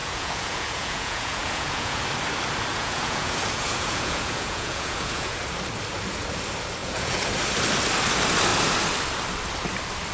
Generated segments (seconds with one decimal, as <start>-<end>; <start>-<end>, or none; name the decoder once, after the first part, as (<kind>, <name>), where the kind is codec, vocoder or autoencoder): 0.0-2.0 (vocoder, Vocos); 2.7-5.4; 6.8-7.3